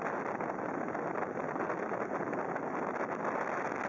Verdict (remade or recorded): recorded